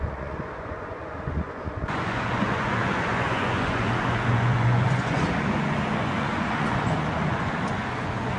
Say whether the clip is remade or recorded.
remade